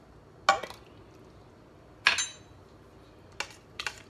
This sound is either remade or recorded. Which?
recorded